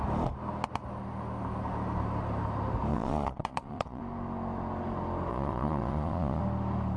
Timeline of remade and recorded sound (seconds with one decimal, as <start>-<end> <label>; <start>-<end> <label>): 0.0-2.9 recorded; 2.9-4.0 remade; 4.0-5.3 recorded; 5.3-6.4 remade; 6.4-7.0 recorded